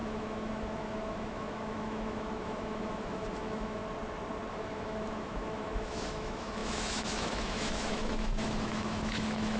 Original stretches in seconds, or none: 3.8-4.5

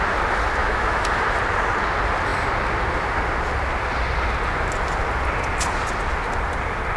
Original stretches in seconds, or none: 0.0-0.6; 1.2-7.0

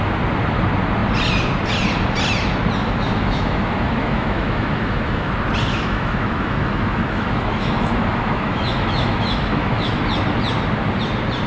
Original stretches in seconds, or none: 0.0-2.8; 5.3-5.7; 10.0-11.5

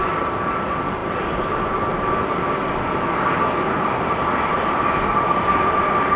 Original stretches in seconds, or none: 0.0-6.2

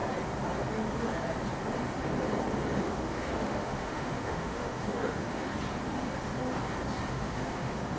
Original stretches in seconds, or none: 0.0-2.8; 5.5-7.1

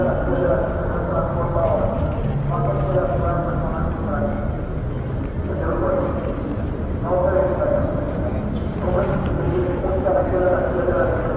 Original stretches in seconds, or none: 0.0-9.6; 10.1-11.4